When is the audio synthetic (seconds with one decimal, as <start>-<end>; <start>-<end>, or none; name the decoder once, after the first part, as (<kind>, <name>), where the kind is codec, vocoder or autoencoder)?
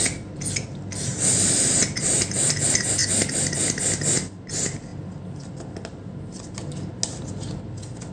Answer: none